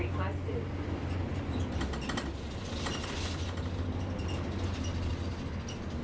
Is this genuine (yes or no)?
yes